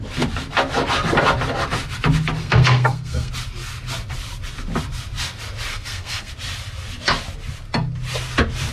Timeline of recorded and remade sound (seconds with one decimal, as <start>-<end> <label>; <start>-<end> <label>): 0.0-2.4 recorded; 2.4-3.3 remade; 3.3-5.7 recorded; 5.7-6.3 remade; 6.3-8.7 recorded